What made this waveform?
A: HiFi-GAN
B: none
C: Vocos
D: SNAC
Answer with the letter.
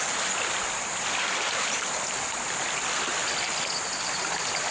B